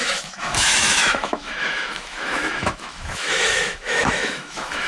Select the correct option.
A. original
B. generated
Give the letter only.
B